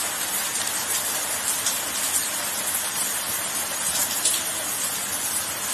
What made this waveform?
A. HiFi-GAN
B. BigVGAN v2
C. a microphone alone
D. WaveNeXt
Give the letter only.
B